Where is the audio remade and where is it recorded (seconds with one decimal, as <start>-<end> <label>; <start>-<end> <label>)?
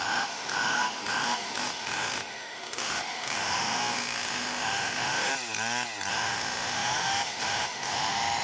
0.0-5.3 remade; 5.3-6.1 recorded; 6.1-8.4 remade